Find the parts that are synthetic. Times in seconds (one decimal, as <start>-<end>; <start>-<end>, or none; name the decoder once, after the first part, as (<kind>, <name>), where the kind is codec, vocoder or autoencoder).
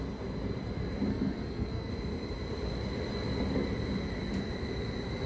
1.1-1.9 (codec, SNAC)